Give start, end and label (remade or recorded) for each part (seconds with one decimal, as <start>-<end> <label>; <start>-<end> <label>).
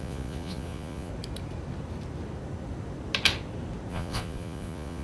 0.0-1.1 remade; 1.1-3.9 recorded; 3.9-5.0 remade